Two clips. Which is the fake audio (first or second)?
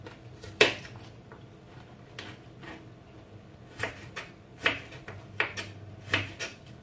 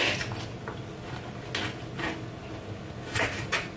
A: first